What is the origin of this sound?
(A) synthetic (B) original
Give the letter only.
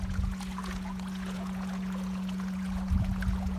A